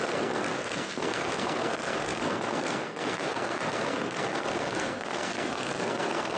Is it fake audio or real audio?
fake